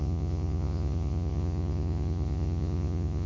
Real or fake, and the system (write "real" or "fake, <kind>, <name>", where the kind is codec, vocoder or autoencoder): fake, vocoder, Vocos